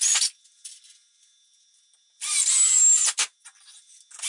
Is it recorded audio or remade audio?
recorded